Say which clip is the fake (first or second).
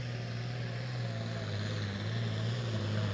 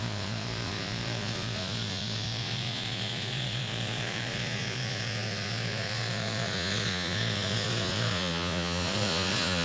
second